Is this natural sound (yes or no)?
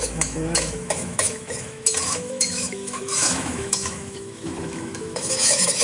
no